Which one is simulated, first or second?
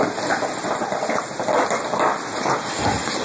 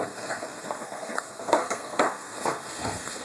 second